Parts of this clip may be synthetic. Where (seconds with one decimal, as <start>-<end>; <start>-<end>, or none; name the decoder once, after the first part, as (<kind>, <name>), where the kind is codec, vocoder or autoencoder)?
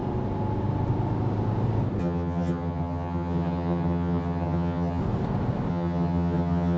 2.0-5.0 (vocoder, HiFi-GAN); 5.7-6.8